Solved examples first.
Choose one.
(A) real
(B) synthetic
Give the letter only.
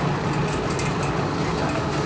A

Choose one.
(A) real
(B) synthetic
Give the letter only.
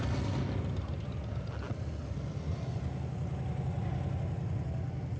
A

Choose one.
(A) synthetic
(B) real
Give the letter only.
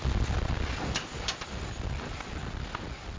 B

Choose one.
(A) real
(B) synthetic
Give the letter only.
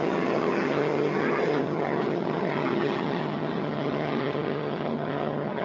B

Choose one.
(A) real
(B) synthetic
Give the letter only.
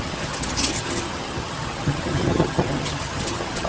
B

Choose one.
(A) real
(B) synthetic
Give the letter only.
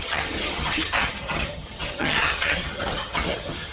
B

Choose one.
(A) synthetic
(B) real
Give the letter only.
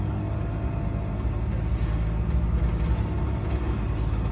B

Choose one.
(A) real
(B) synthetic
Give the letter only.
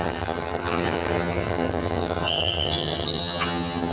B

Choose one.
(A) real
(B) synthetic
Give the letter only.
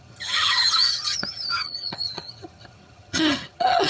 B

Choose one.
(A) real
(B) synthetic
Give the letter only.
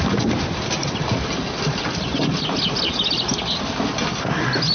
A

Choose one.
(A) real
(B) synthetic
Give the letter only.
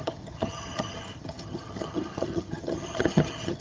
B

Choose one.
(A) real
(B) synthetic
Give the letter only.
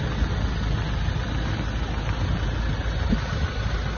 A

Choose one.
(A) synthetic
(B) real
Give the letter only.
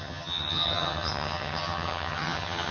A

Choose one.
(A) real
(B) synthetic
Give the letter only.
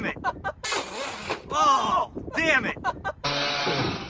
A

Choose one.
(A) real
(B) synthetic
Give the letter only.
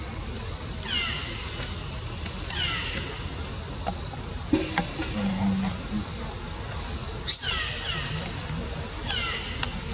A